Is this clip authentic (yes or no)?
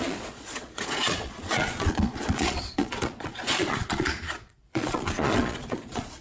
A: no